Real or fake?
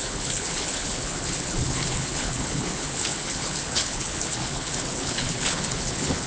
fake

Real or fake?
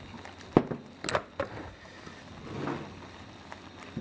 real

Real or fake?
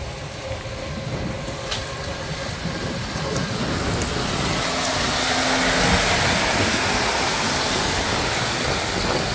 real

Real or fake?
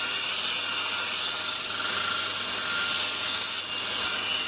real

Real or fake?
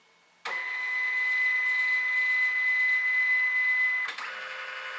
real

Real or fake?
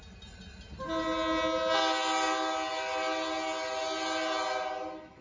real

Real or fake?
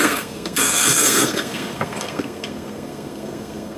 fake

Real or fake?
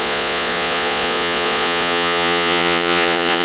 fake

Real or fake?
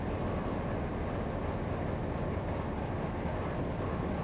real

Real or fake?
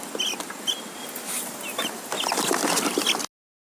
real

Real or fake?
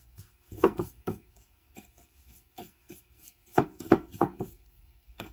fake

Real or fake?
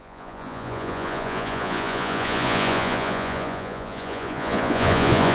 fake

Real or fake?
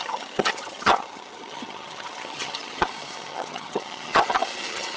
fake